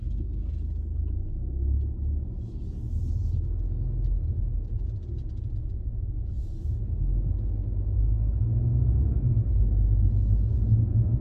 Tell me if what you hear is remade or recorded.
recorded